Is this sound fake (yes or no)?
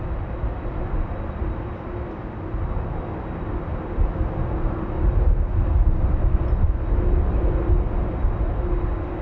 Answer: no